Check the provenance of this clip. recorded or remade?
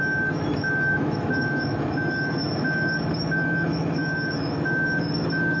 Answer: remade